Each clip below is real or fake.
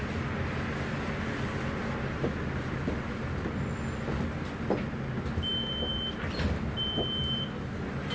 real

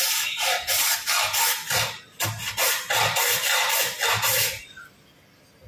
real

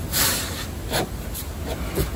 real